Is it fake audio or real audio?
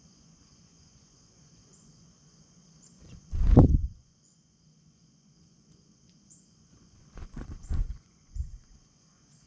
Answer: fake